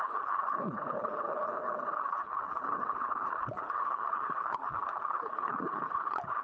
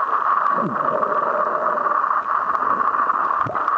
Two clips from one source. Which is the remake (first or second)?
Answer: first